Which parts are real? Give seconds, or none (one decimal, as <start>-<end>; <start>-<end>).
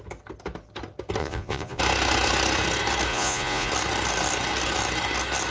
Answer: 0.0-1.2; 1.8-3.1; 3.7-5.5